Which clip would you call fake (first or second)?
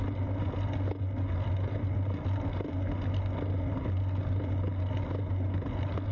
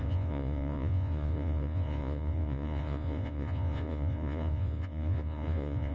second